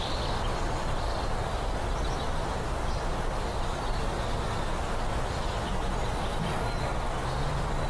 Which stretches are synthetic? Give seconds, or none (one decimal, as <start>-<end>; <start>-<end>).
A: 1.1-3.8